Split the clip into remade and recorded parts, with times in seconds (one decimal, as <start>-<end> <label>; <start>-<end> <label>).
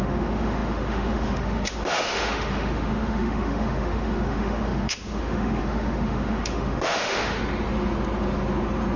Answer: 0.0-7.4 remade; 7.4-9.0 recorded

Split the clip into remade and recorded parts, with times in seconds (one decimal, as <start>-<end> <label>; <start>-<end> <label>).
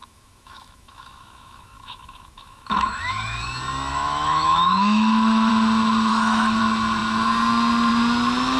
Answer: 0.0-3.4 remade; 3.4-3.9 recorded; 3.9-5.5 remade; 5.5-6.1 recorded; 6.1-6.6 remade; 6.6-8.6 recorded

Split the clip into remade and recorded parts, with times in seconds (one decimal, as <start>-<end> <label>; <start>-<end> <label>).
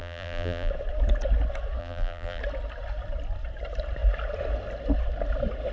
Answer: 0.0-0.7 remade; 0.7-1.8 recorded; 1.8-2.4 remade; 2.4-5.7 recorded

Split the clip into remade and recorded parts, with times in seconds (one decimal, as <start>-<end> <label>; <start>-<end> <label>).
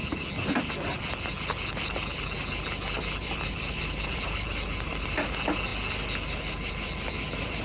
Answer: 0.0-2.6 recorded; 2.6-5.7 remade; 5.7-6.7 recorded; 6.7-7.6 remade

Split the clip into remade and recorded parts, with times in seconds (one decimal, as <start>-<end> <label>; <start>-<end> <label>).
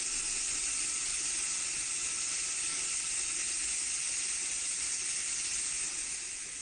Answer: 0.0-6.6 recorded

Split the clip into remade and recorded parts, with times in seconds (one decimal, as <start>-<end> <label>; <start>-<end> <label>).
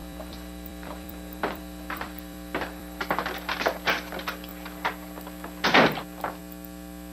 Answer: 0.0-3.0 remade; 3.0-7.1 recorded